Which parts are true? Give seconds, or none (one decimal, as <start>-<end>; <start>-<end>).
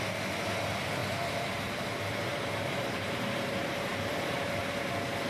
0.0-1.0; 3.0-3.9; 4.6-5.3